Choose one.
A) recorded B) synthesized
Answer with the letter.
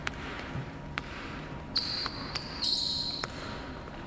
B